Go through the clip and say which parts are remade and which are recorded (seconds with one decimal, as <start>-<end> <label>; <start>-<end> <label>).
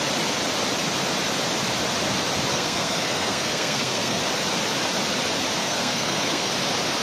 0.0-2.5 recorded; 2.5-4.2 remade; 4.2-5.6 recorded; 5.6-6.5 remade; 6.5-7.0 recorded